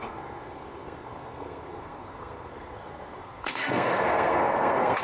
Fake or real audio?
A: fake